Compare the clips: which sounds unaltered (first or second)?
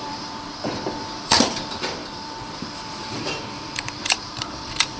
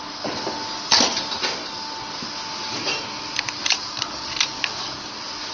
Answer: second